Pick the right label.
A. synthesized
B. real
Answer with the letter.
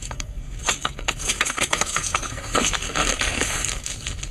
A